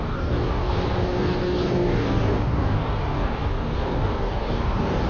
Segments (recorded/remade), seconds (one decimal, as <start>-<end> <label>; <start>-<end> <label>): 0.0-5.1 remade